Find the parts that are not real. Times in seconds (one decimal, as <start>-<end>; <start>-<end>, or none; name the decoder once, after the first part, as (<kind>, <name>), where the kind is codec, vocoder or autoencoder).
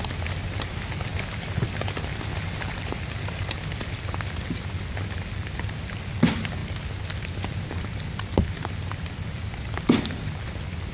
2.3-3.6 (vocoder, BigVGAN v2)